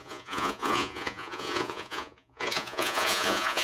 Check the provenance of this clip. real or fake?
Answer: fake